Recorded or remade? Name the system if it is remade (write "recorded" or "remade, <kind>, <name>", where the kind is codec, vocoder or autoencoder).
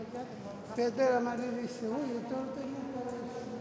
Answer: recorded